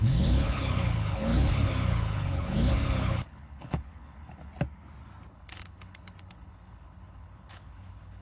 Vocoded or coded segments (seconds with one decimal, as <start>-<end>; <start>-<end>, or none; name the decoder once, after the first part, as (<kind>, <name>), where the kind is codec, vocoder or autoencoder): 0.0-4.5 (codec, HILCodec); 5.3-8.2